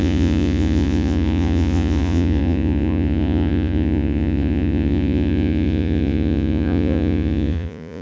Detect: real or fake fake